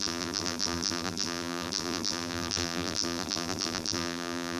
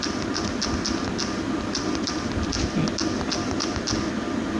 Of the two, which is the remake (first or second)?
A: first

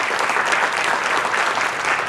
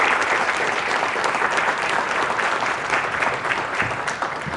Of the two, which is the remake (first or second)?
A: second